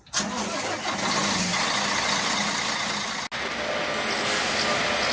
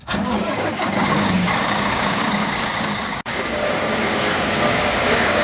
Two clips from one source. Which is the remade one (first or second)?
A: second